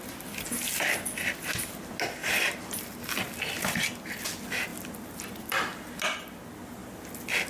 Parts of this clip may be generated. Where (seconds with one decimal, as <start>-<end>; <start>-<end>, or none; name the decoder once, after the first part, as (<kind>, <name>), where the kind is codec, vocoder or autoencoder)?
2.2-2.8 (vocoder, BigVGAN v2)